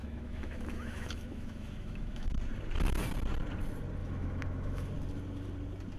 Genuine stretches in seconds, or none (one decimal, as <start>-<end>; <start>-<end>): 2.4-4.0; 4.9-6.0